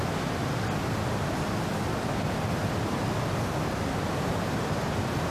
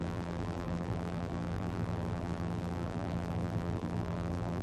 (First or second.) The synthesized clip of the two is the second